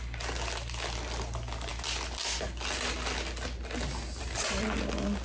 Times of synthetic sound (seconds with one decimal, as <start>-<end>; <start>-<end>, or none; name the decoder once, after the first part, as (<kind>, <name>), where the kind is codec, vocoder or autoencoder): none